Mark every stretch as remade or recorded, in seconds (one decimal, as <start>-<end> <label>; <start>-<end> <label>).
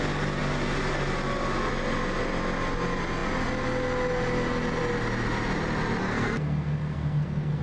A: 0.0-6.0 recorded; 6.0-7.6 remade